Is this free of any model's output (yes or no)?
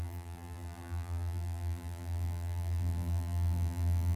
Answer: no